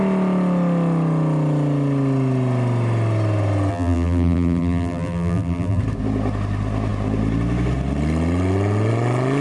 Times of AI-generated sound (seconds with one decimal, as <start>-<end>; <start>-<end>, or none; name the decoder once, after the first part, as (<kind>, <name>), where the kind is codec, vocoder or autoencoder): 3.7-5.8 (vocoder, BigVGAN v2)